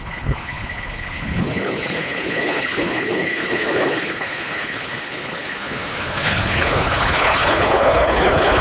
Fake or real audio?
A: fake